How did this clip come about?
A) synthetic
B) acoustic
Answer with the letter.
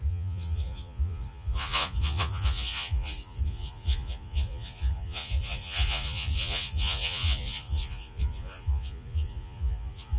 A